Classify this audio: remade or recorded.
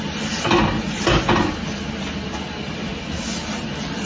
recorded